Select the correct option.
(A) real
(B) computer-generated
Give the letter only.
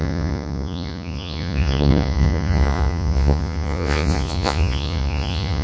B